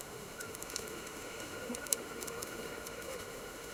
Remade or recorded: remade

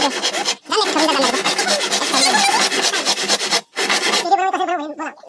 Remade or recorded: recorded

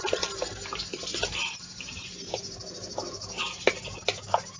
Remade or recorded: recorded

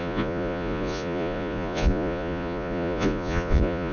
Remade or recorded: remade